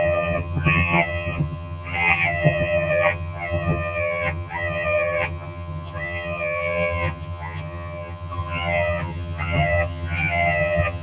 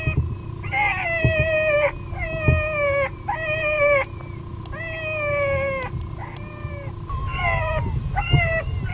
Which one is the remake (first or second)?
first